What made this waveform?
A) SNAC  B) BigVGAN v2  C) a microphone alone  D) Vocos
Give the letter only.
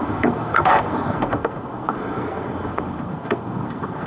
A